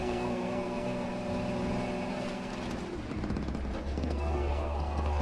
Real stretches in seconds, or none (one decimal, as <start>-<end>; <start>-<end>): 1.1-2.1; 2.5-3.8